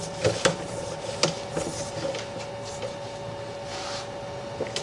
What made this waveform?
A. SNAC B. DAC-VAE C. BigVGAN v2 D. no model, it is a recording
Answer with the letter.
D